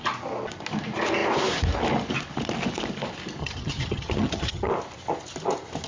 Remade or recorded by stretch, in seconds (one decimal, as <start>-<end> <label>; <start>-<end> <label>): 0.0-3.4 recorded; 3.4-4.7 remade; 4.7-5.9 recorded